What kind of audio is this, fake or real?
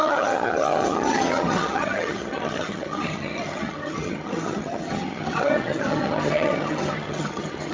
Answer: fake